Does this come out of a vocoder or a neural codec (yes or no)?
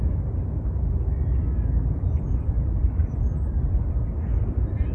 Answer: no